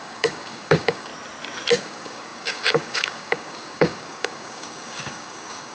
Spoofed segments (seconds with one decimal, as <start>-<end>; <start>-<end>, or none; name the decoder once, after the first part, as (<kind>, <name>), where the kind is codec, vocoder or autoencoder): 0.0-1.1 (codec, DAC); 1.8-5.7